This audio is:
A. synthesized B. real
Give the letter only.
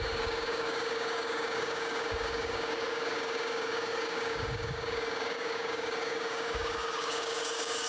A